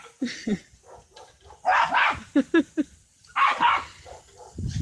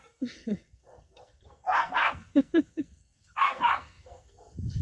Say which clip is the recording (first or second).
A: first